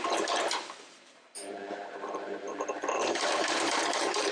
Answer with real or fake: fake